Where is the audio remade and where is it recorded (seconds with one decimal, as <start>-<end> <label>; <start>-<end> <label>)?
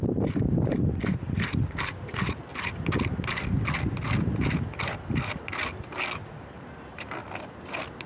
0.0-2.5 remade; 2.5-6.3 recorded; 6.3-7.2 remade; 7.2-8.1 recorded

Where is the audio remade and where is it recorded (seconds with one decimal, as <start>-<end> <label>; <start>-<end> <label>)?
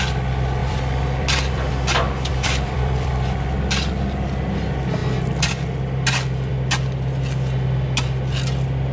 0.0-0.6 recorded; 0.6-1.7 remade; 1.7-2.3 recorded; 2.3-3.1 remade; 3.1-8.9 recorded